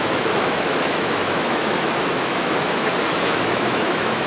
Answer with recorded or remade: remade